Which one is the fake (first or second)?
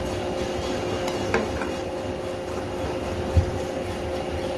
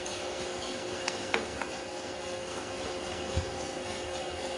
second